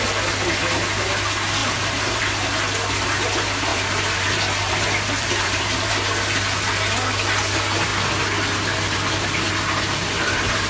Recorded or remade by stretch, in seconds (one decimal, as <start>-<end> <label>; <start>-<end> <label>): 0.0-1.6 recorded; 1.6-2.2 remade; 2.2-3.7 recorded; 3.7-5.9 remade; 5.9-10.7 recorded